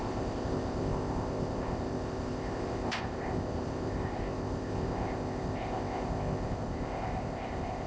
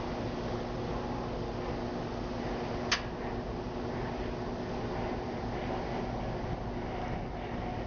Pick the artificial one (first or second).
first